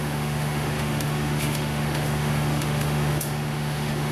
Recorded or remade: remade